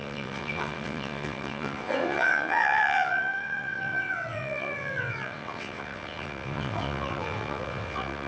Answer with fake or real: fake